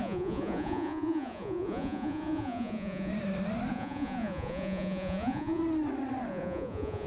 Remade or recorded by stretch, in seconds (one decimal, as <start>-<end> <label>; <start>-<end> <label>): 0.0-3.1 remade; 3.1-3.7 recorded; 3.7-5.6 remade; 5.6-6.3 recorded; 6.3-7.1 remade